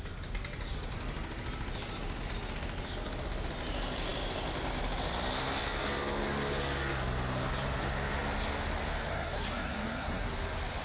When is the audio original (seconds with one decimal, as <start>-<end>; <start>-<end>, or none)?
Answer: 0.0-9.1; 10.3-10.8